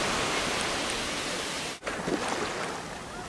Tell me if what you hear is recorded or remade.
recorded